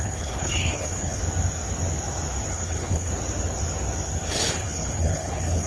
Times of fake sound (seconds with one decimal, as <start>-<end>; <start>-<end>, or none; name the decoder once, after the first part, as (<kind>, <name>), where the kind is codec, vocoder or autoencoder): 0.0-1.2 (codec, HILCodec); 2.5-3.1; 4.3-5.7